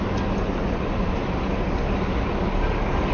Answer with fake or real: real